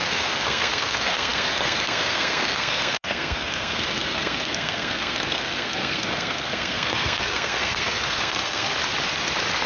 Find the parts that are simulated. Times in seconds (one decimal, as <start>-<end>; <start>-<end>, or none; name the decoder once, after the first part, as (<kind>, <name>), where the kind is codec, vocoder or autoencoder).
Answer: 0.0-8.7 (codec, SNAC)